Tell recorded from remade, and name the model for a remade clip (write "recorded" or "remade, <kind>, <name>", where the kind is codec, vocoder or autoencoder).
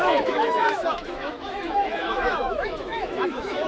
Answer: remade, autoencoder, DAC-VAE